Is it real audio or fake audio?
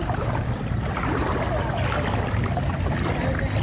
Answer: real